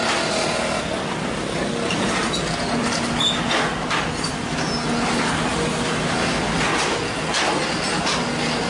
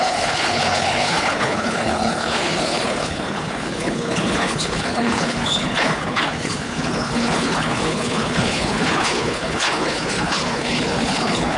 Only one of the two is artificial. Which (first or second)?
second